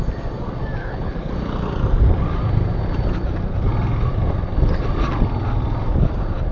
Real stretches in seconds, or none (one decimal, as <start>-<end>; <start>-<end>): 0.0-0.8; 1.3-6.5